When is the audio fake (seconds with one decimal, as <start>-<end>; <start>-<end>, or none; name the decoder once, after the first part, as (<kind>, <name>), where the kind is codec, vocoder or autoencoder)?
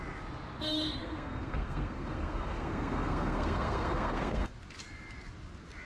1.0-4.5 (codec, SNAC)